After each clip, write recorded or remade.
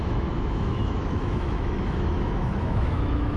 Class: remade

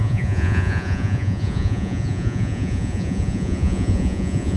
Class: remade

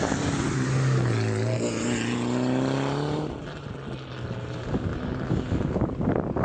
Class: recorded